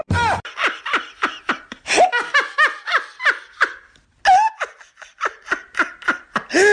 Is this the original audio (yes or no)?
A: yes